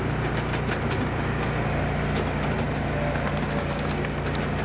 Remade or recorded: recorded